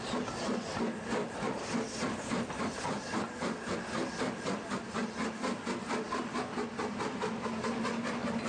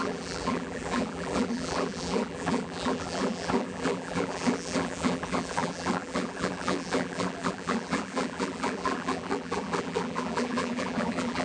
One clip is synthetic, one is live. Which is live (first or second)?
first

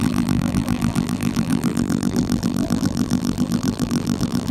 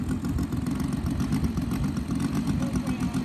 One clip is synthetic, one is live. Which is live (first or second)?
second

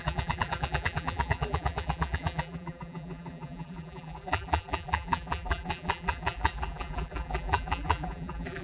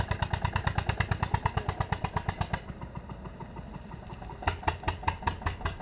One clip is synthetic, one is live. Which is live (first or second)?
second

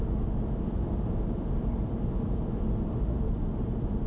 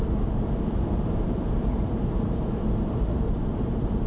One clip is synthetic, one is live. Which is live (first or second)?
first